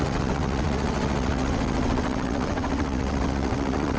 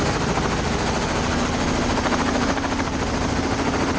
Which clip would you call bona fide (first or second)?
second